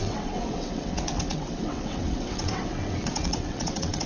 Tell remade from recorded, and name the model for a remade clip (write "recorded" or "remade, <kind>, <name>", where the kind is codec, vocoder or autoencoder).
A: remade, vocoder, WaveNeXt